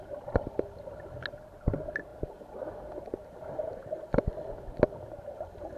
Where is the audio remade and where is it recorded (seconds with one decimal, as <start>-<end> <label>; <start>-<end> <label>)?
0.0-5.8 recorded